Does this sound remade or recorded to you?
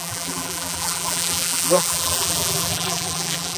remade